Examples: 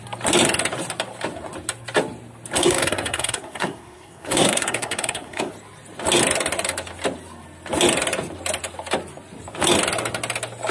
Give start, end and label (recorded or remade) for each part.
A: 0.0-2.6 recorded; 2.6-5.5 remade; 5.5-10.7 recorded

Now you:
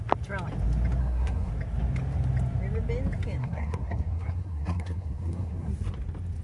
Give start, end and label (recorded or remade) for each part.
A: 0.0-1.0 recorded; 1.0-1.5 remade; 1.5-3.4 recorded; 3.4-5.7 remade; 5.7-6.4 recorded

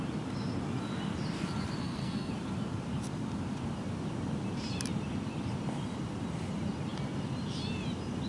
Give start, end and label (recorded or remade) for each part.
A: 0.0-1.8 recorded; 1.8-2.3 remade; 2.3-8.3 recorded